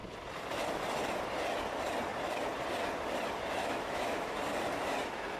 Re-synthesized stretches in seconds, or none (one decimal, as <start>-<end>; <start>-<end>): 3.6-4.4